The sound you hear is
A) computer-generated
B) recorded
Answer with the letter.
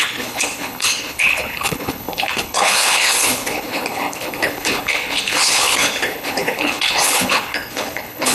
A